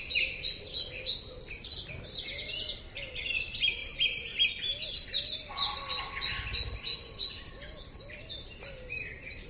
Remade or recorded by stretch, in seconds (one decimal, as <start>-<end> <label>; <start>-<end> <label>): 0.0-9.5 recorded

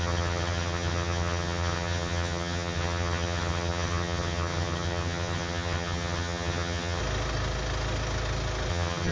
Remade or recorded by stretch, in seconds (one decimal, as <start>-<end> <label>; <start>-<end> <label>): 0.0-7.0 remade; 7.0-8.7 recorded; 8.7-9.1 remade

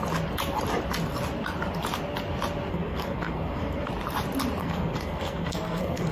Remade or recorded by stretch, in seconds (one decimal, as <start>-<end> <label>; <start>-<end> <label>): 0.0-2.7 recorded; 2.7-3.9 remade; 3.9-4.6 recorded; 4.6-6.1 remade

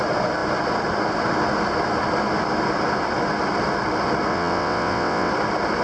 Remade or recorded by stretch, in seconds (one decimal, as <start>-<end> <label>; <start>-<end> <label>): 0.0-4.3 recorded; 4.3-5.3 remade; 5.3-5.8 recorded

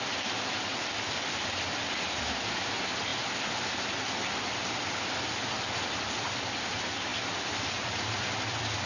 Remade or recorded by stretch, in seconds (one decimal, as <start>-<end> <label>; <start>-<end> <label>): 0.0-3.1 remade; 3.1-5.9 recorded; 5.9-8.9 remade